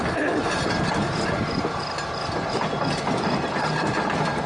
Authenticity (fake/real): real